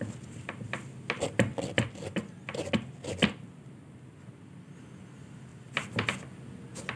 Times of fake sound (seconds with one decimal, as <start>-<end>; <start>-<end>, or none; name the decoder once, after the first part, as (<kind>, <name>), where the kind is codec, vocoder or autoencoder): none